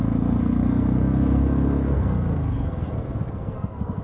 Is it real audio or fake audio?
fake